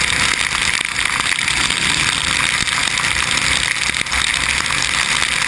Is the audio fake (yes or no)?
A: no